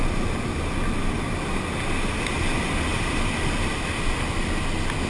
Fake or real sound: real